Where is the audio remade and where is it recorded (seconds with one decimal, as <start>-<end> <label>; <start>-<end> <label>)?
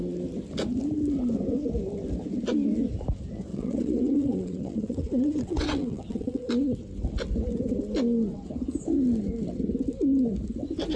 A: 0.0-3.5 recorded; 3.5-6.5 remade; 6.5-11.0 recorded